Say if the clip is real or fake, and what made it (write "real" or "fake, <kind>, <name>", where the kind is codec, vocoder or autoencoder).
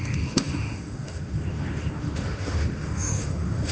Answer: fake, autoencoder, DAC-VAE